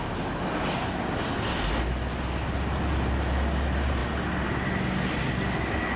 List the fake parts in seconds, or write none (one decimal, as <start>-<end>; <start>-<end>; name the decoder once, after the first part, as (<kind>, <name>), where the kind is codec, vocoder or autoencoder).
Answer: none